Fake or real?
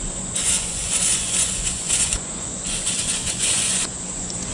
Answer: fake